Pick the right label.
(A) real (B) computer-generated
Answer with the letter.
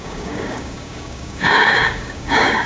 B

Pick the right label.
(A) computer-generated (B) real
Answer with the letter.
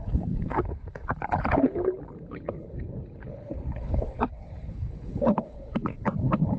A